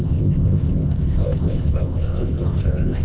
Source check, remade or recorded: remade